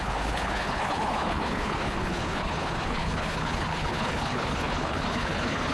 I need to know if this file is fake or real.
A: fake